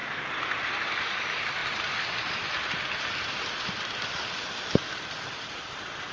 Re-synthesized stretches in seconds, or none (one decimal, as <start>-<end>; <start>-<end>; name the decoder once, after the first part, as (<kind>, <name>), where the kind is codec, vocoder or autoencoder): 0.6-1.6 (vocoder, BigVGAN v2); 4.9-6.1

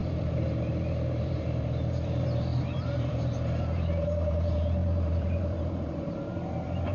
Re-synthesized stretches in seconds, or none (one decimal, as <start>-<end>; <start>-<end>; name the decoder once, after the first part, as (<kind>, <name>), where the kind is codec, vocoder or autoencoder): 0.0-6.9 (vocoder, BigVGAN v2)

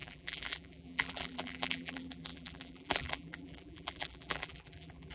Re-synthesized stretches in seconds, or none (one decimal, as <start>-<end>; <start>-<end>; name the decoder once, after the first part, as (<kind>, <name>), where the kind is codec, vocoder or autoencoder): 0.0-5.1 (vocoder, BigVGAN v2)

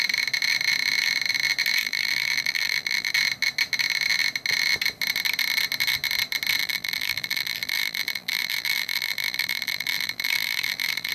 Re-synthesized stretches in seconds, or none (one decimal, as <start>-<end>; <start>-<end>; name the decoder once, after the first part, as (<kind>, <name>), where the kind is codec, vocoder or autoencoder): 1.8-3.1 (vocoder, BigVGAN v2); 6.6-11.1